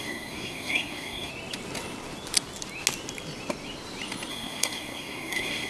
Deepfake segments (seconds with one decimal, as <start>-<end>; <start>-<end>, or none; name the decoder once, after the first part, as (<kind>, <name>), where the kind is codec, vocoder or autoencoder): 0.0-1.3 (codec, SNAC); 4.3-5.7

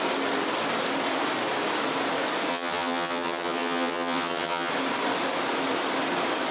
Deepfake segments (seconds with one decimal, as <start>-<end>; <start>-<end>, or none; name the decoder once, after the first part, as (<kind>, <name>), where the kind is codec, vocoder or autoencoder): 2.5-4.7 (vocoder, HiFi-GAN)

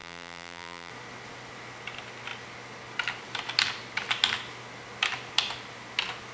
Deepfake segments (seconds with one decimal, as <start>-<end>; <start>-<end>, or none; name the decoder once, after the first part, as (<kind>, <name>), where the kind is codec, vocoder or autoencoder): 0.0-0.9 (vocoder, BigVGAN v2)

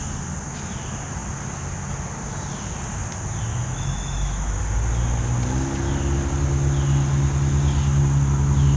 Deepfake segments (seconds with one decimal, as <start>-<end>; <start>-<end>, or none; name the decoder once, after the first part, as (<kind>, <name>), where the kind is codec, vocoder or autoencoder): 3.5-4.6 (autoencoder, DAC-VAE)

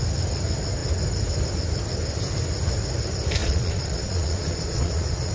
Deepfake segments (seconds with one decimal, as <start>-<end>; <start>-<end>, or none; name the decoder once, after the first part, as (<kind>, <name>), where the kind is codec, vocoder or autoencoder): 3.4-5.3 (vocoder, Vocos)

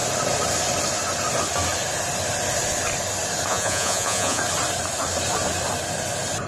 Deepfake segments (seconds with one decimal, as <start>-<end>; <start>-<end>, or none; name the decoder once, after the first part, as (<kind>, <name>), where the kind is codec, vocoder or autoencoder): 3.5-4.4 (vocoder, Vocos)

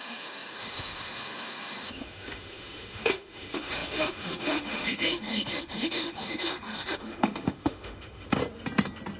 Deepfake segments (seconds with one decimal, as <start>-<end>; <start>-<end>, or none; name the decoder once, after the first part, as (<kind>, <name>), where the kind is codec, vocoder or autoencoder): 0.0-8.4 (autoencoder, DAC-VAE)